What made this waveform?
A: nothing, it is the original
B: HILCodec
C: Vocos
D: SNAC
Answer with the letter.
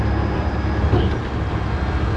A